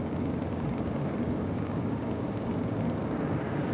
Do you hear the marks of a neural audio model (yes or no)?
yes